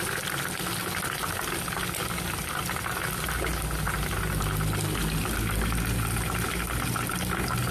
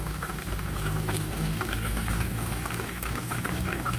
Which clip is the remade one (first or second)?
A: second